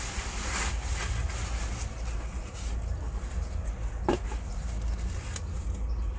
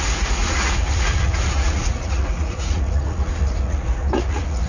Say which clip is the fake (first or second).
second